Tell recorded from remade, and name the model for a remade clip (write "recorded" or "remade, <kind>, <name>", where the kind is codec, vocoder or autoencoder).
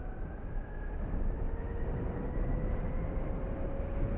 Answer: recorded